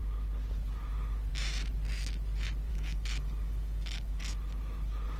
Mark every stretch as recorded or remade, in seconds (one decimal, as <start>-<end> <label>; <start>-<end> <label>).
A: 0.0-2.7 recorded; 2.7-4.2 remade; 4.2-5.2 recorded